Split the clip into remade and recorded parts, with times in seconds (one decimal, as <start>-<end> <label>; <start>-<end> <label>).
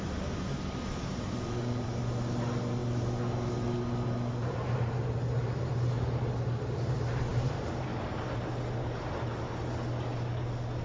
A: 0.0-1.1 recorded; 1.1-2.0 remade; 2.0-7.3 recorded; 7.3-8.1 remade; 8.1-10.8 recorded